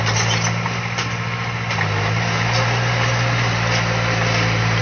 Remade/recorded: recorded